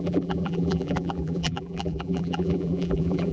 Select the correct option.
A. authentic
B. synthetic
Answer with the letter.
B